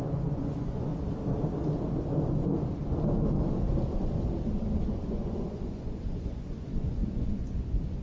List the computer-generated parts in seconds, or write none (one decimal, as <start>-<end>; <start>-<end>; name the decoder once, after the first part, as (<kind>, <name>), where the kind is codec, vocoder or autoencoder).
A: 0.0-0.9 (vocoder, Vocos); 4.8-8.0